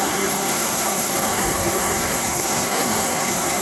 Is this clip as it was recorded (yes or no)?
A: no